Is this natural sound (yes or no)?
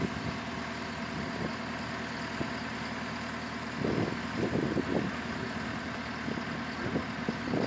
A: yes